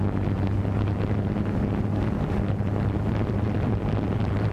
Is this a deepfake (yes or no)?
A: no